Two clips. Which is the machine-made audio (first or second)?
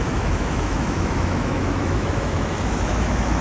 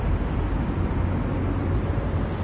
first